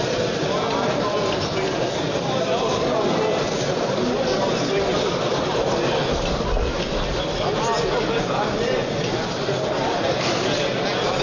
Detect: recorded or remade recorded